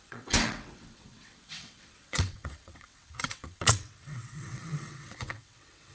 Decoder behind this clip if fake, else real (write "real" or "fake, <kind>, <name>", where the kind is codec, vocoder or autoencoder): fake, vocoder, WaveNeXt